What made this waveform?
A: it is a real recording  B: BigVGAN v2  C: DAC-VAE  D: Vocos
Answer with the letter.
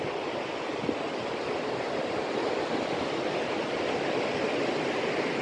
A